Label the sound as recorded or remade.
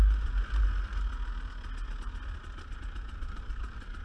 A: recorded